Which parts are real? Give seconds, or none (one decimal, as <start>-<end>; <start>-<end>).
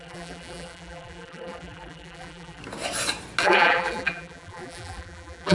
2.6-3.4